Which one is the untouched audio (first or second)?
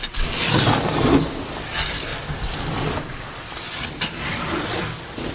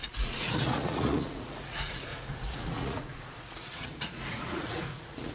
first